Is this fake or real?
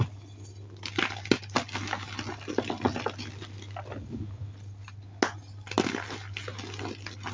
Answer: real